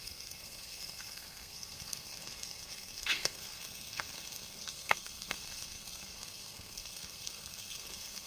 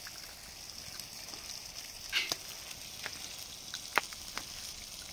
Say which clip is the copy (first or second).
first